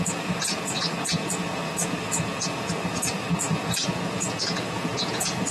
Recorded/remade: remade